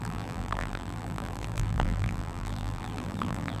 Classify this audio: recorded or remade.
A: remade